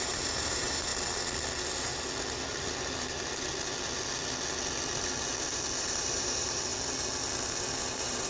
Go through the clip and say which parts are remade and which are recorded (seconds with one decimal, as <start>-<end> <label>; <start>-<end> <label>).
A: 0.0-0.9 remade; 0.9-5.8 recorded; 5.8-6.7 remade; 6.7-7.8 recorded; 7.8-8.3 remade